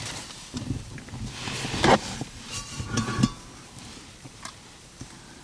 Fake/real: real